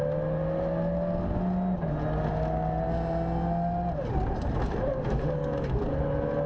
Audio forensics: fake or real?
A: real